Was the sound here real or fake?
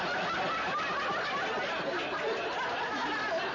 real